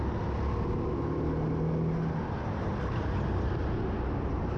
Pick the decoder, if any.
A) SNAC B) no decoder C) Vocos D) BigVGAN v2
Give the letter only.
B